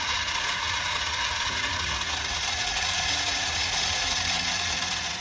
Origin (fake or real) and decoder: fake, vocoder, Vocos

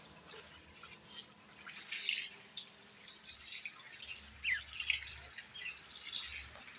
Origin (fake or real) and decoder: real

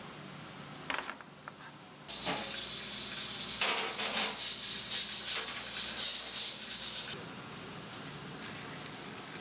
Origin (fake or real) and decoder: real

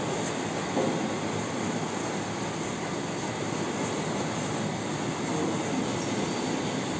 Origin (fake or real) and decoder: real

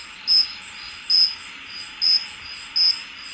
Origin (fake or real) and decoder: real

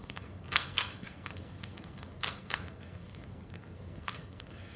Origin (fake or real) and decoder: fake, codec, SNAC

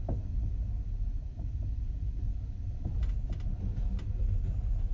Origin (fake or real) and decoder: real